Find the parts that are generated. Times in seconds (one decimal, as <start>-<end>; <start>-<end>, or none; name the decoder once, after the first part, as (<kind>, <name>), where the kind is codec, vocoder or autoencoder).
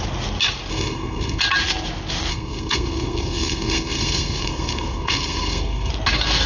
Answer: 0.7-1.4 (codec, SNAC); 2.3-5.9